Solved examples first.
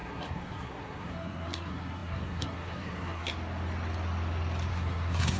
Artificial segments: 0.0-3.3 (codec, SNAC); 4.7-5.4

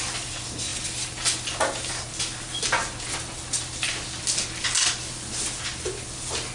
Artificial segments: none

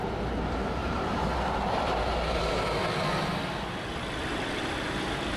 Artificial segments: 0.8-2.4 (vocoder, BigVGAN v2); 4.2-5.0

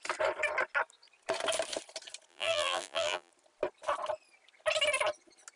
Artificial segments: 2.3-3.3 (vocoder, BigVGAN v2)

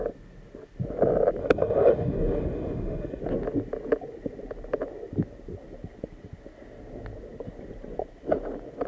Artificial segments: 1.4-3.2 (autoencoder, DAC-VAE)

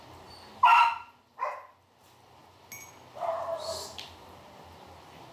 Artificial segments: none